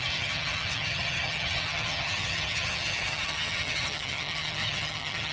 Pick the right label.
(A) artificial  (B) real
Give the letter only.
A